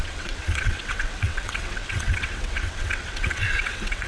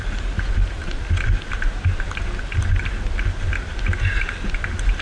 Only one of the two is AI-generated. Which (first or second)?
first